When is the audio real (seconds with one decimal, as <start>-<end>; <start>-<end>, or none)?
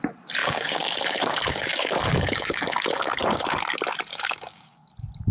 0.0-0.4; 3.6-4.1; 4.8-5.3